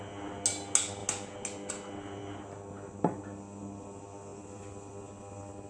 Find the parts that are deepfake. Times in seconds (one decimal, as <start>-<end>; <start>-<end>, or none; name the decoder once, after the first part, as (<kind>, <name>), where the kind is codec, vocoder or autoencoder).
none